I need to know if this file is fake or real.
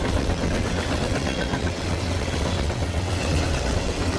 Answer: fake